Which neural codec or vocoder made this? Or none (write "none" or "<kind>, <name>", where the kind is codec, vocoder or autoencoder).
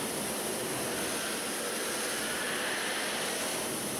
none